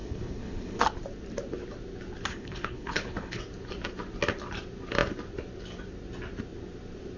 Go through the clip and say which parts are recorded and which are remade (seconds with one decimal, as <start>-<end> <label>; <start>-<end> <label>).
0.0-0.8 remade; 0.8-2.3 recorded; 2.3-3.4 remade; 3.4-7.2 recorded

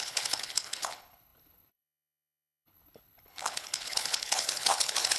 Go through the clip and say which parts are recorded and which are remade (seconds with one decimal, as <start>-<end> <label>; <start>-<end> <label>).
0.0-5.2 remade

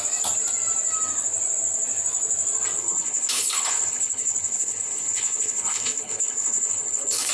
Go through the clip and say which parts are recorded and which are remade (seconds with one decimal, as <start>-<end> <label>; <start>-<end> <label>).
0.0-2.8 recorded; 2.8-7.3 remade

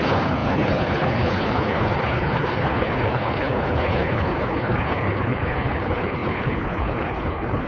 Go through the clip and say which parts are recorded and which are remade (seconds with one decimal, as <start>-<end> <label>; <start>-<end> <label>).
0.0-7.7 remade

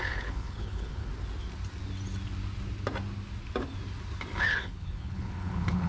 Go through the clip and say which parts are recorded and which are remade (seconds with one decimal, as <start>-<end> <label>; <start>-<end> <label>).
0.0-1.1 remade; 1.1-4.4 recorded; 4.4-5.9 remade

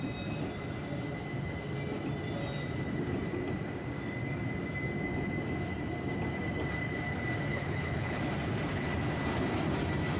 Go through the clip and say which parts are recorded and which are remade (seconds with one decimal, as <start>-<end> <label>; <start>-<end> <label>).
0.0-7.5 recorded; 7.5-8.2 remade; 8.2-10.2 recorded

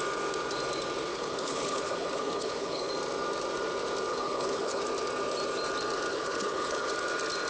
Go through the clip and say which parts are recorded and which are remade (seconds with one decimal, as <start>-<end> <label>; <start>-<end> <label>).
0.0-1.1 recorded; 1.1-2.9 remade; 2.9-4.1 recorded; 4.1-4.8 remade; 4.8-6.1 recorded; 6.1-6.9 remade; 6.9-7.5 recorded